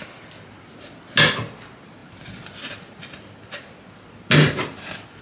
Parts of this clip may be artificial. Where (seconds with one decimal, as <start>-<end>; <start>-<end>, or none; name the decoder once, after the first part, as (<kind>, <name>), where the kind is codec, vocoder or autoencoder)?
none